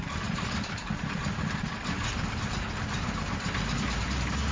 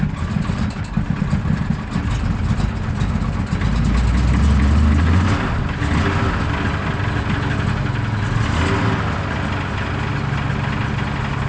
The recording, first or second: second